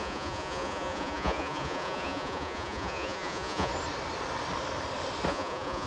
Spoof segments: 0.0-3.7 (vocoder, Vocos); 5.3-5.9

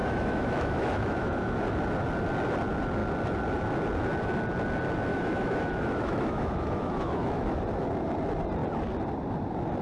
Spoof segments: 0.0-1.6 (autoencoder, DAC-VAE); 5.1-7.6

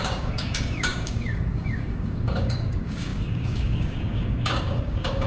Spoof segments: 0.0-5.3 (codec, DAC)